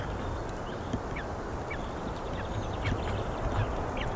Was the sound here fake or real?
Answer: real